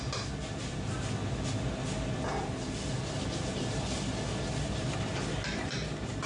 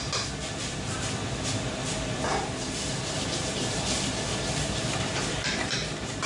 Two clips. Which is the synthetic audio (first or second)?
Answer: second